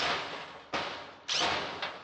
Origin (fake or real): real